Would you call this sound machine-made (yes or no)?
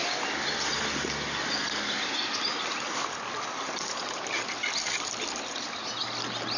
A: no